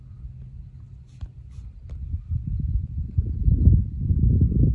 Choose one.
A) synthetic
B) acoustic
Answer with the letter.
B